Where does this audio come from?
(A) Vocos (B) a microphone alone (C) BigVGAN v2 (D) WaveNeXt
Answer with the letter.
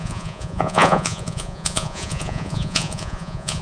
A